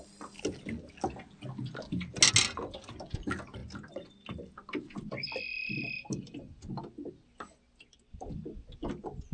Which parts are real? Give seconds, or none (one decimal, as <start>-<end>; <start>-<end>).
0.0-9.3